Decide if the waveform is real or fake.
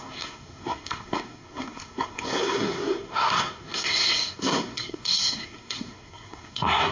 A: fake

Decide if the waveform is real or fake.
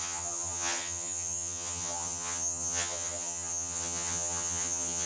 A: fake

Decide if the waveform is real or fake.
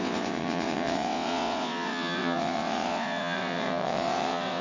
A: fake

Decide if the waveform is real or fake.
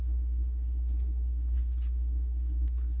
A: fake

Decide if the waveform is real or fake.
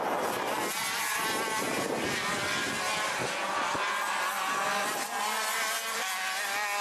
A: real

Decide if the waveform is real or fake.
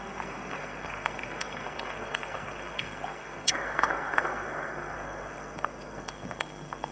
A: fake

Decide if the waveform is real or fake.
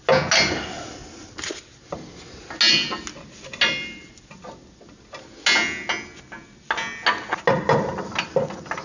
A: real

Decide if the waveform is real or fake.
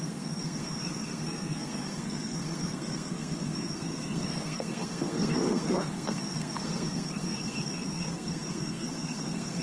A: fake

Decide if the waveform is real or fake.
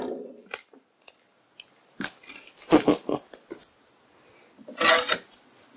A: real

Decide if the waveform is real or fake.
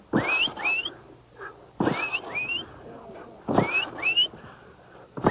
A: real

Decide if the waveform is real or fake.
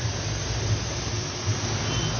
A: real